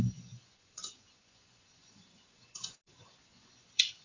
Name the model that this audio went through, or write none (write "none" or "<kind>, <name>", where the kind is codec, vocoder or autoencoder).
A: vocoder, Vocos